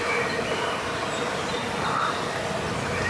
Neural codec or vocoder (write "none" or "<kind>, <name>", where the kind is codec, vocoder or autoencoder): none